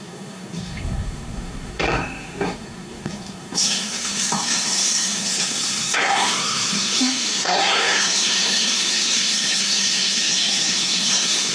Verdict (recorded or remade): remade